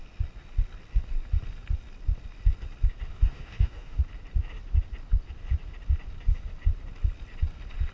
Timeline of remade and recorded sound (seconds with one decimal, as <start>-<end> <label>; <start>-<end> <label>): 0.0-3.1 recorded; 3.1-4.0 remade; 4.0-7.9 recorded